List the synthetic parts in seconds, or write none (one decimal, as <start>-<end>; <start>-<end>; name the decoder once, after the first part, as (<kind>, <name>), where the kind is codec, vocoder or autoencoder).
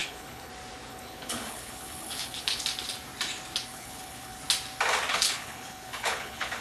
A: 0.0-0.5 (codec, HILCodec); 0.9-2.6; 3.7-4.4; 5.1-6.6